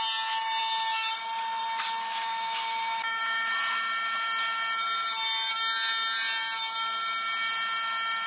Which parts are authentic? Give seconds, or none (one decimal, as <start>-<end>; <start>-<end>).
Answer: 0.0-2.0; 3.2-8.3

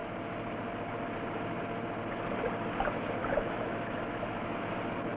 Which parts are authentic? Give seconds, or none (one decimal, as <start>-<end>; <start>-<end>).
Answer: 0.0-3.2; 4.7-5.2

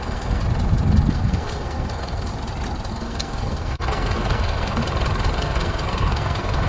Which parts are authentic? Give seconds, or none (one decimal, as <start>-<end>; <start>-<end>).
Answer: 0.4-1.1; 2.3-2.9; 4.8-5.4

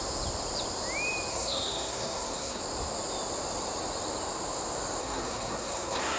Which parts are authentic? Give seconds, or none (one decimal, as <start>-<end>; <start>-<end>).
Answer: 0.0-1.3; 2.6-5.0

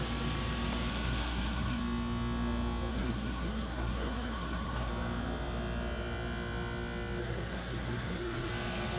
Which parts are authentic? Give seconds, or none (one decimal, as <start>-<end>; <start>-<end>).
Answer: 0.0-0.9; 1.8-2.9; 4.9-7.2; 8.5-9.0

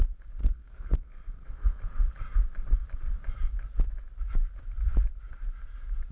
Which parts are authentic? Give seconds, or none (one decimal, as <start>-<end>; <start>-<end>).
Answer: 0.0-0.4; 1.8-6.1